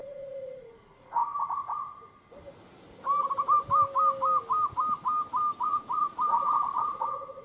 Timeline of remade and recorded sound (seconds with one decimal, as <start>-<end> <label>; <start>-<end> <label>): 0.0-1.2 remade; 1.2-5.6 recorded; 5.6-7.4 remade